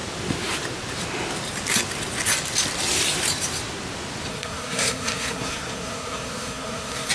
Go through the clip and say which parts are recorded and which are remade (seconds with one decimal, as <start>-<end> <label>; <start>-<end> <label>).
0.0-4.3 recorded; 4.3-7.1 remade